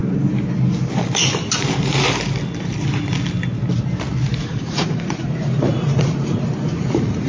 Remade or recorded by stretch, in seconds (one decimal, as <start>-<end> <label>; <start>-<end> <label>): 0.0-4.4 recorded; 4.4-7.3 remade